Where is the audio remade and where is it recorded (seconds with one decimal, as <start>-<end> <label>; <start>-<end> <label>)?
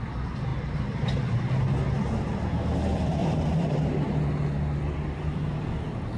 0.0-0.5 recorded; 0.5-1.6 remade; 1.6-3.2 recorded; 3.2-3.9 remade; 3.9-6.2 recorded